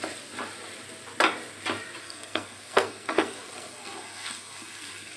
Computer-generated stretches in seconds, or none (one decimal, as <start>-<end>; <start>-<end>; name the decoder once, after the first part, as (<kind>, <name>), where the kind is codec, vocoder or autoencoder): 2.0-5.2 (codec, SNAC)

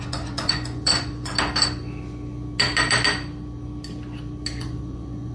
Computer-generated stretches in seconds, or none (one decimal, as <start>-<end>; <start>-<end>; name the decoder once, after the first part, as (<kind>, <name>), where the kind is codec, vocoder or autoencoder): 0.0-1.3 (vocoder, Vocos); 4.5-5.3

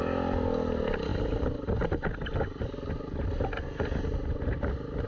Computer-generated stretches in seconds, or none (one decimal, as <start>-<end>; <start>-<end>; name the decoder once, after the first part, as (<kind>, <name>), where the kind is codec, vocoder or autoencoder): none

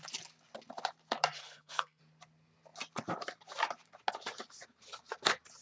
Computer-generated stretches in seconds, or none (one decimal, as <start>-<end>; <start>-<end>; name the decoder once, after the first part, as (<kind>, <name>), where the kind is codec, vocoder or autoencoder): 1.4-2.0 (codec, SNAC)